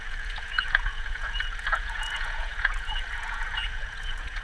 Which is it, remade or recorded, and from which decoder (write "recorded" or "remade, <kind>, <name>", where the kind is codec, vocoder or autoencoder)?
remade, vocoder, Vocos